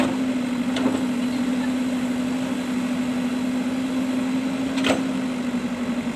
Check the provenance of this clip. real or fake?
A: real